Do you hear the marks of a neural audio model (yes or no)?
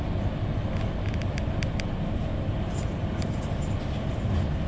no